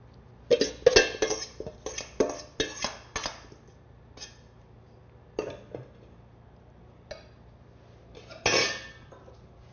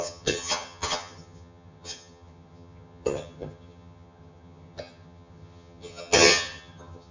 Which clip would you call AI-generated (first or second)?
second